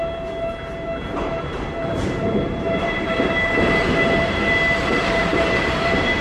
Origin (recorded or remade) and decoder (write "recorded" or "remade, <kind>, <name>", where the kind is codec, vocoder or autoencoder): remade, vocoder, BigVGAN v2